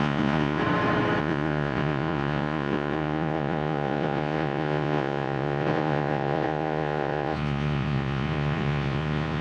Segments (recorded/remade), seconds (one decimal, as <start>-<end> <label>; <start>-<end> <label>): 0.0-0.6 remade; 0.6-1.2 recorded; 1.2-9.4 remade